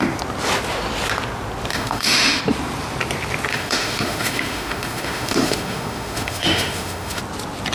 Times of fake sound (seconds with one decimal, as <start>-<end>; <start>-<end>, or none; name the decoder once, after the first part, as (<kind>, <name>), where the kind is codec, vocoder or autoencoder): 1.7-2.4 (autoencoder, DAC-VAE); 3.5-7.2

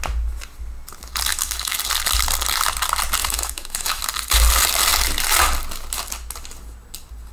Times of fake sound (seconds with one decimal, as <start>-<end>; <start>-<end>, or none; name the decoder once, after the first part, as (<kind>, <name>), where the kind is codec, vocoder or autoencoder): 1.3-1.8 (autoencoder, DAC-VAE); 3.2-4.0

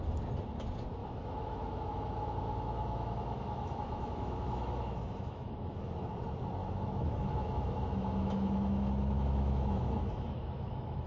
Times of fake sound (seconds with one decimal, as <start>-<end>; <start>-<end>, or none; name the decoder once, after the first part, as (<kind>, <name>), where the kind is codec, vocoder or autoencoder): 1.0-6.1 (autoencoder, DAC-VAE); 6.6-11.1

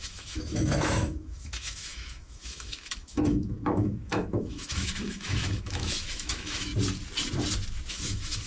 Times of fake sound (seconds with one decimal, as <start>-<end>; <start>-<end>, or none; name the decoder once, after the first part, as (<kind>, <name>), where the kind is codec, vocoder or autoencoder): 0.0-6.7 (autoencoder, DAC-VAE); 7.9-8.5

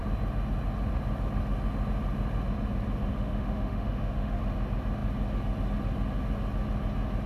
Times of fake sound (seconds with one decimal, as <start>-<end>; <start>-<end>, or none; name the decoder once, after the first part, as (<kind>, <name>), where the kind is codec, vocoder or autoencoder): 3.1-4.4 (autoencoder, DAC-VAE)

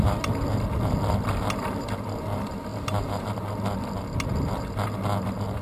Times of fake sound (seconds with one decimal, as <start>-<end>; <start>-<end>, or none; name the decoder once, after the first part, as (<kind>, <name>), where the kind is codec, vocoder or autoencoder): none

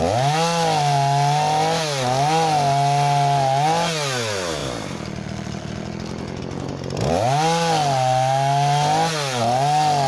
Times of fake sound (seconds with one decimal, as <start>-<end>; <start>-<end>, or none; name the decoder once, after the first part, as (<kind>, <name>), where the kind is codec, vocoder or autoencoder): none

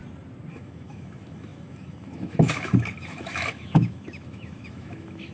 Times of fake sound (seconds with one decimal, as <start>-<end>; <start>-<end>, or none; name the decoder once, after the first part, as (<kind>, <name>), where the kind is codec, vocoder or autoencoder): 0.5-5.3 (autoencoder, DAC-VAE)